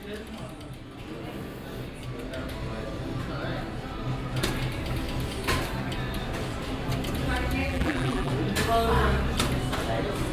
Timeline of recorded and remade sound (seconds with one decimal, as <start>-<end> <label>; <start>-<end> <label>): 0.0-7.6 recorded; 7.6-8.3 remade; 8.3-10.3 recorded